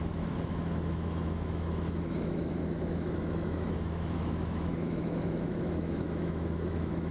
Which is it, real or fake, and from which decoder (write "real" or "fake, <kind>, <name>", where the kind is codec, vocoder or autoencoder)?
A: fake, autoencoder, DAC-VAE